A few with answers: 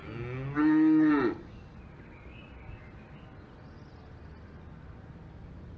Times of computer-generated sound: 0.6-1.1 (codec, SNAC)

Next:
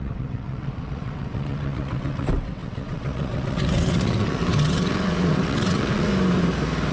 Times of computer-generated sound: 0.0-6.1 (vocoder, WaveNeXt)

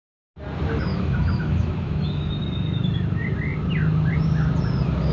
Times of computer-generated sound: 0.9-2.3 (autoencoder, DAC-VAE)

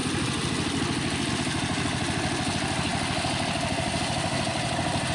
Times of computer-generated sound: 2.9-4.0 (vocoder, BigVGAN v2); 4.5-5.1

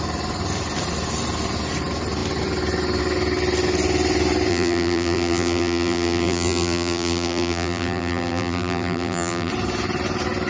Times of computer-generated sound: 4.5-9.5 (vocoder, BigVGAN v2)

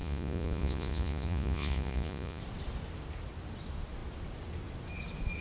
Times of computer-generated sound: 0.0-2.4 (vocoder, Vocos)

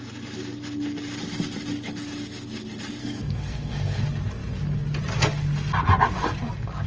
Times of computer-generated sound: 3.0-4.0 (codec, SNAC)

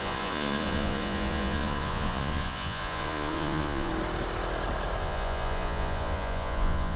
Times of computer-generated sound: 0.0-3.9 (vocoder, Vocos); 5.0-7.0